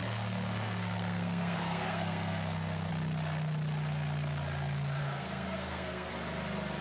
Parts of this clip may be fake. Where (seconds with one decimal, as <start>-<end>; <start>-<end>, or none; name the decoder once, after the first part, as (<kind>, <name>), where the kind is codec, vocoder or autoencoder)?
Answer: 0.0-2.9 (codec, SNAC); 5.0-6.1